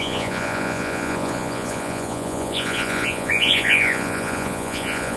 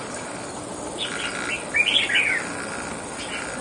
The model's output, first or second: first